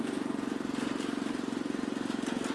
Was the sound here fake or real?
real